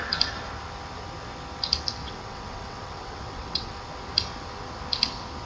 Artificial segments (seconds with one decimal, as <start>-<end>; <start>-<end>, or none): 2.0-3.8